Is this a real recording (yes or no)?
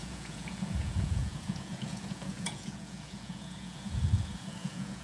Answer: no